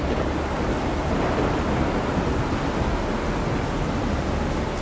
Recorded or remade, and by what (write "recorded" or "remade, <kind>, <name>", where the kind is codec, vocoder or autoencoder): recorded